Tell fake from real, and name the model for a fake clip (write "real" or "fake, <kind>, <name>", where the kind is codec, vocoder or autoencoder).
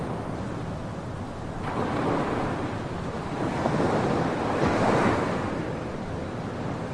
real